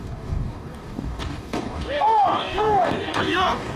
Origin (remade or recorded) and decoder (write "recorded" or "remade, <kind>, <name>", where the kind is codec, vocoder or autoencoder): remade, codec, DAC